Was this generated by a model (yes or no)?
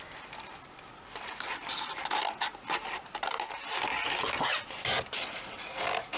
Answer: no